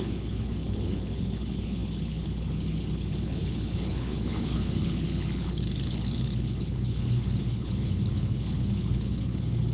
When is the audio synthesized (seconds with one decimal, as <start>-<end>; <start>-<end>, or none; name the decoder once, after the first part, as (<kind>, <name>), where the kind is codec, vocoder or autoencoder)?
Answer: 0.0-9.7 (codec, HILCodec)